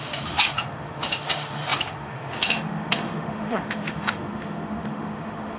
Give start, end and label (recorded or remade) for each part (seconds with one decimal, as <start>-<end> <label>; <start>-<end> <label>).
0.0-5.6 remade